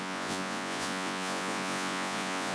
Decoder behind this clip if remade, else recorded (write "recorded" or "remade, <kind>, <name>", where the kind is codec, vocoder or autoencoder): remade, vocoder, Vocos